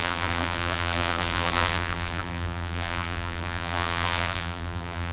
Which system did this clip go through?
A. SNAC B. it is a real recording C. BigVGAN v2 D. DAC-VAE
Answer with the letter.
C